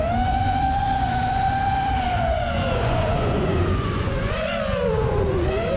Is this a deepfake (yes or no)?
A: yes